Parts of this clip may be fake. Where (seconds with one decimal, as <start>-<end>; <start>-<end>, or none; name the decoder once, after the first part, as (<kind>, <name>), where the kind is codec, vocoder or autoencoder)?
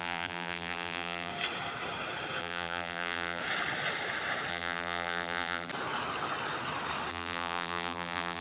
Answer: 0.0-1.3 (vocoder, BigVGAN v2); 2.4-3.4; 4.5-5.7; 7.1-8.4